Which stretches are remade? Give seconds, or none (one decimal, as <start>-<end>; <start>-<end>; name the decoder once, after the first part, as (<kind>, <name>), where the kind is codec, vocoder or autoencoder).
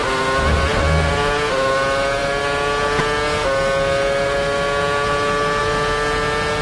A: none